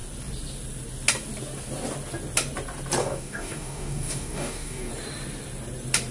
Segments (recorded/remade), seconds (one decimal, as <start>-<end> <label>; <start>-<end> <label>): 0.0-3.0 recorded; 3.0-4.9 remade; 4.9-6.1 recorded